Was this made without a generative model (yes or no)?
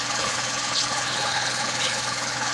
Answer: no